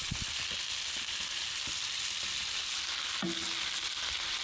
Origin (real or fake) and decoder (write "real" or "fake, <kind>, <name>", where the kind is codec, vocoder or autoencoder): real